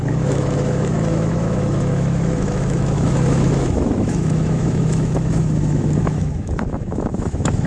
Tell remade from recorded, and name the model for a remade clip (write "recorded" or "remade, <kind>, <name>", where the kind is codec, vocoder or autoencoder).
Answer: remade, autoencoder, DAC-VAE